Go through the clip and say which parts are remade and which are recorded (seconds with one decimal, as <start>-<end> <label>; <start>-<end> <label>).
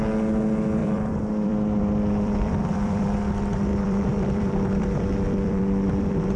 0.0-0.8 recorded; 0.8-3.2 remade; 3.2-3.7 recorded; 3.7-6.4 remade